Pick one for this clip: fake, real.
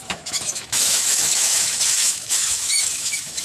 fake